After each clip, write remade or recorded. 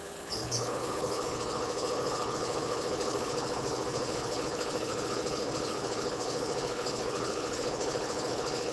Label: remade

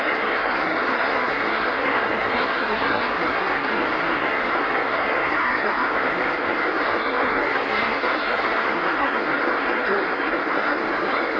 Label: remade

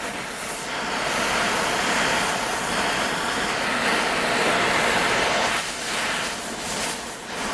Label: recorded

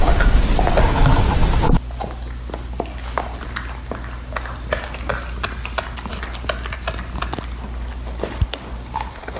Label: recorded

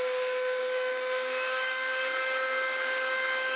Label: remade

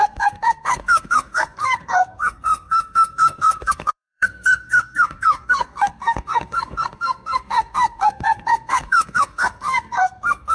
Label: remade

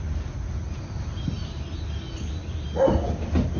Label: recorded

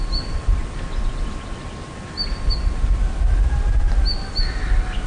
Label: recorded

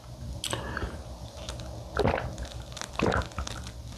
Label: recorded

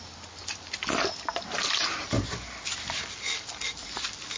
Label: recorded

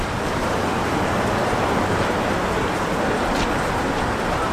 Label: remade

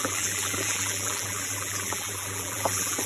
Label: remade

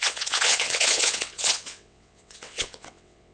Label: remade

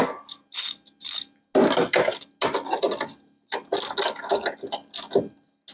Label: recorded